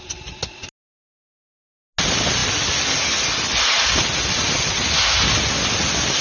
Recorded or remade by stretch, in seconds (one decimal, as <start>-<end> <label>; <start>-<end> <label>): 0.0-6.2 recorded